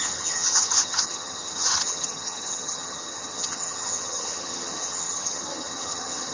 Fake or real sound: fake